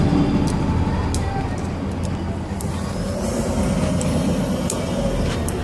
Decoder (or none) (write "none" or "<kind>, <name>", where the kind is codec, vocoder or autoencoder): none